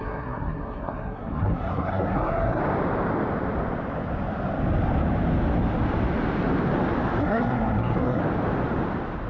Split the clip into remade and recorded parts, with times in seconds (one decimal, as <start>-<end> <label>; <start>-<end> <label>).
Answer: 0.0-2.6 remade; 2.6-7.2 recorded; 7.2-8.2 remade; 8.2-9.3 recorded